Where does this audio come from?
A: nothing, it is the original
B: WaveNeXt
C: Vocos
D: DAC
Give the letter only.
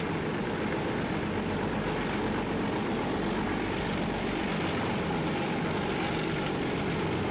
A